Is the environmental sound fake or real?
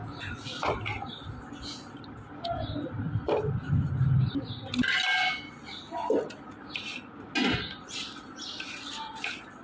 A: real